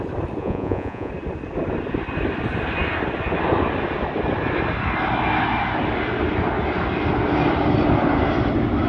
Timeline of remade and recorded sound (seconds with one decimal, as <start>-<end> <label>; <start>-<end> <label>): 0.0-0.4 recorded; 0.4-1.1 remade; 1.1-8.9 recorded

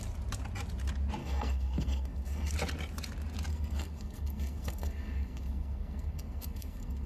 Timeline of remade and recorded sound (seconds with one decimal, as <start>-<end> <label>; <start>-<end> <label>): 0.0-1.2 recorded; 1.2-2.5 remade; 2.5-3.5 recorded; 3.5-7.1 remade

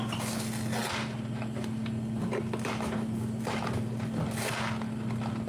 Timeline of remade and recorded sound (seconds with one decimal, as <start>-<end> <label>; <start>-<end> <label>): 0.0-5.5 recorded

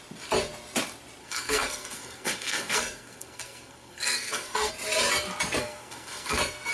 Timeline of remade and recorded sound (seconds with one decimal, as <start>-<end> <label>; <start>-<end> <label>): 0.0-1.2 recorded; 1.2-4.7 remade; 4.7-5.6 recorded; 5.6-6.7 remade

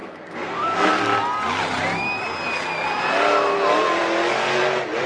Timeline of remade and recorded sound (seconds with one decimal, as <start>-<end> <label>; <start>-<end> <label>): 0.0-0.9 remade; 0.9-5.1 recorded

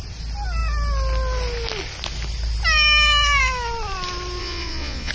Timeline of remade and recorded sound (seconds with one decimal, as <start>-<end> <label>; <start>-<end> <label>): 0.0-4.4 recorded; 4.4-5.1 remade

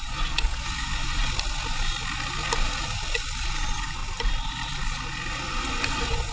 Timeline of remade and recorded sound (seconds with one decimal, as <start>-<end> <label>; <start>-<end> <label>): 0.0-1.2 remade; 1.2-3.6 recorded; 3.6-4.0 remade; 4.0-5.3 recorded; 5.3-6.3 remade

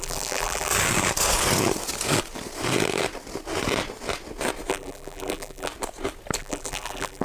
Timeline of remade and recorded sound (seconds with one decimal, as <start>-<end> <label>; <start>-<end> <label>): 0.0-0.7 remade; 0.7-4.7 recorded; 4.7-5.7 remade; 5.7-6.4 recorded; 6.4-7.2 remade